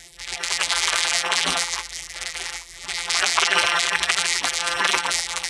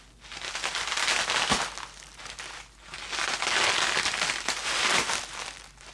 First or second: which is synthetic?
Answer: first